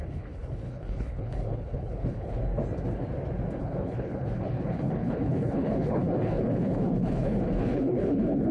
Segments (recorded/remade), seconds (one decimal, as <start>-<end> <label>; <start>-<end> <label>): 0.0-2.4 remade; 2.4-3.6 recorded; 3.6-8.5 remade